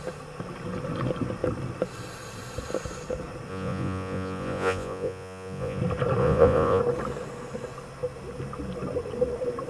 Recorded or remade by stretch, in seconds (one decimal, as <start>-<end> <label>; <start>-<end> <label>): 0.0-3.5 recorded; 3.5-5.8 remade; 5.8-6.2 recorded; 6.2-6.8 remade; 6.8-9.7 recorded